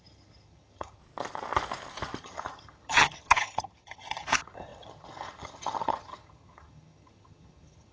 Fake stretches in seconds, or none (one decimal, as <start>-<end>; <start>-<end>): 0.0-1.0; 2.2-7.9